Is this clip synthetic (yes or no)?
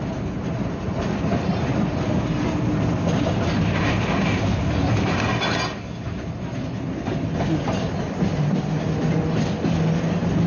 no